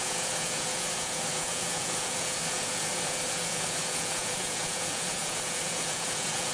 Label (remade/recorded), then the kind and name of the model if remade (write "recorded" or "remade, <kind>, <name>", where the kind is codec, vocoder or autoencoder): remade, vocoder, Vocos